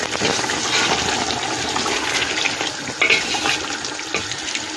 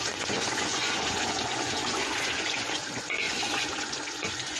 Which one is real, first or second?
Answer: first